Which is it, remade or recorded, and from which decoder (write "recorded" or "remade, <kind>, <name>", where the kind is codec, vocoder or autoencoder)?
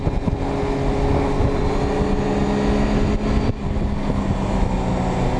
recorded